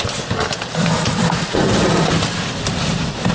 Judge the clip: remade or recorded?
recorded